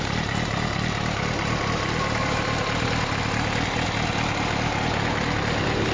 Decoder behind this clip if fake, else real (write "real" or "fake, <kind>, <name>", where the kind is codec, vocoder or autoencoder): real